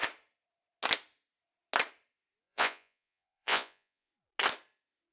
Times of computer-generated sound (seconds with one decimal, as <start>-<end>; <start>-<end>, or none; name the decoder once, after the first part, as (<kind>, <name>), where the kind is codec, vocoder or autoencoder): 2.4-4.1 (vocoder, Vocos)